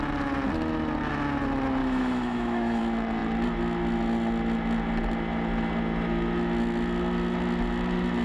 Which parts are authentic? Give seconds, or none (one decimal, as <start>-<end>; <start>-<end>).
0.0-1.8; 2.8-8.2